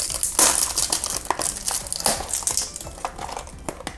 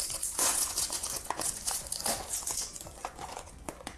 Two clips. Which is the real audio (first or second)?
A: first